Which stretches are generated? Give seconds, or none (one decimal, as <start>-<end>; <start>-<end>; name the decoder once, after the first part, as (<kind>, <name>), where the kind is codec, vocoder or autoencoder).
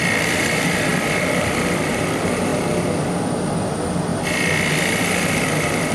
none